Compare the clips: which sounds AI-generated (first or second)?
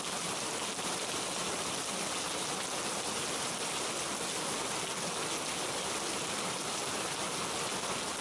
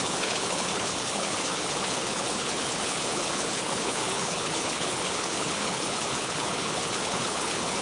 second